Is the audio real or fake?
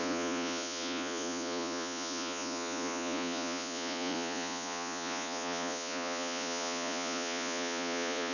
fake